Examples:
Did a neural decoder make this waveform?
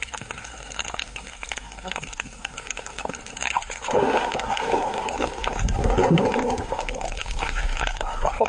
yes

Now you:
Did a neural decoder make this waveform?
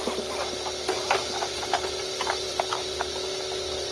no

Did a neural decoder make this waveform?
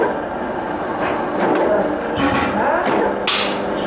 no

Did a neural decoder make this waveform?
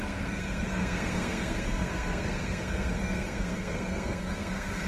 yes